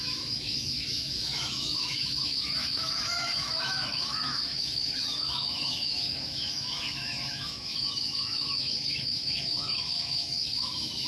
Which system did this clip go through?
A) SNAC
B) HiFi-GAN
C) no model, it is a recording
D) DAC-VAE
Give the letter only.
D